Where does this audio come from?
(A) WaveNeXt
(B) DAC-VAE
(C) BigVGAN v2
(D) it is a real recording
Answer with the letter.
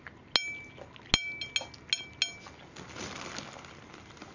D